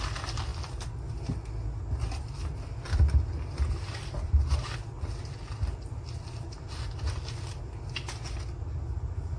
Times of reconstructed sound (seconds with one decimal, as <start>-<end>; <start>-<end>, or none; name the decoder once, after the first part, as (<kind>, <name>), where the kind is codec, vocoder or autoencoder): none